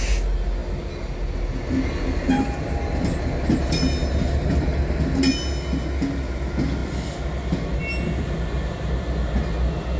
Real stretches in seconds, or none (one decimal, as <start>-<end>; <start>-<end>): 0.0-10.0